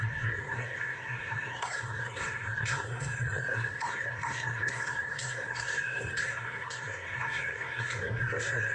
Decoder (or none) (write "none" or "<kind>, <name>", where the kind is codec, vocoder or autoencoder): codec, SNAC